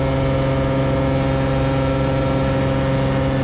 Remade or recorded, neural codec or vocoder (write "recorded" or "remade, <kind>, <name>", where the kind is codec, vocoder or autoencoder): recorded